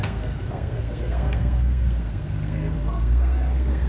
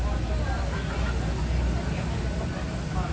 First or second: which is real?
second